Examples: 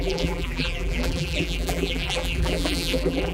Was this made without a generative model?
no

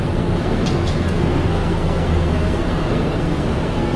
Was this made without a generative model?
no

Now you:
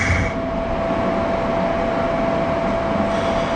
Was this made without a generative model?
yes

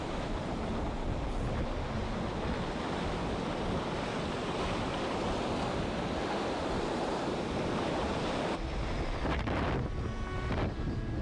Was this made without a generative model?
yes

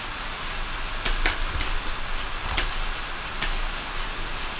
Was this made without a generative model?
yes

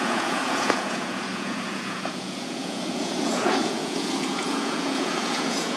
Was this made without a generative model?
no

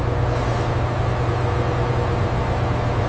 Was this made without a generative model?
yes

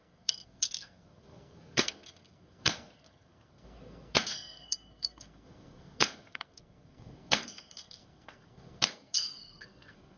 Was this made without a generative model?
no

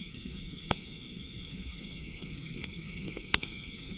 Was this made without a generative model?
no